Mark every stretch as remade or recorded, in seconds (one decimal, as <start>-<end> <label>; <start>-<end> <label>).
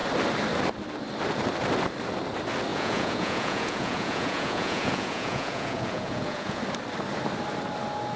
0.0-2.7 recorded; 2.7-6.6 remade; 6.6-8.2 recorded